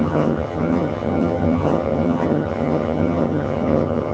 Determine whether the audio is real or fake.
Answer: fake